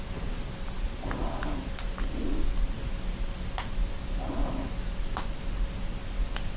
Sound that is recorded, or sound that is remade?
recorded